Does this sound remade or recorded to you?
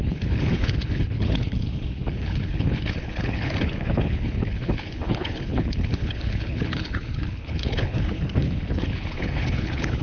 remade